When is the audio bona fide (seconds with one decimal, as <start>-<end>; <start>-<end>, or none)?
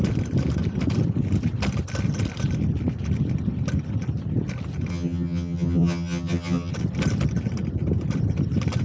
0.0-4.9; 6.7-8.8